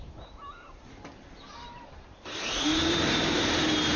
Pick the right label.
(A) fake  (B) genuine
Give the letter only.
A